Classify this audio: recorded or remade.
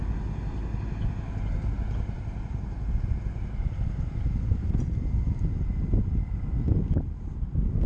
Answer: recorded